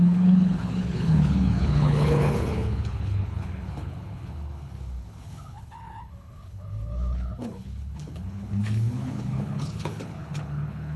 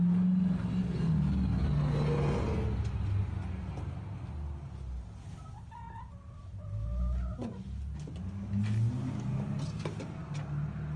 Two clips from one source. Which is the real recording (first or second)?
second